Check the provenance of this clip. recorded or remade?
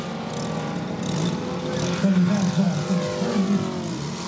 recorded